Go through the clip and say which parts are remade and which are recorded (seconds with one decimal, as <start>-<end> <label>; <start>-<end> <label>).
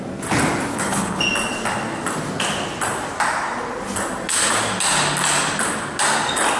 0.0-0.7 recorded; 0.7-1.2 remade; 1.2-6.6 recorded